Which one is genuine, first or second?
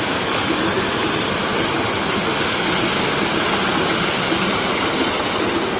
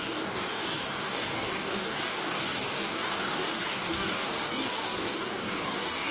first